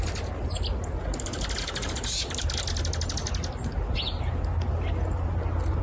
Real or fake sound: real